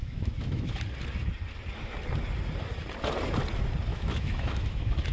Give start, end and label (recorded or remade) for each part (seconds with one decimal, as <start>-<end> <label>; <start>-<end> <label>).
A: 0.0-0.8 remade; 0.8-3.9 recorded; 3.9-5.1 remade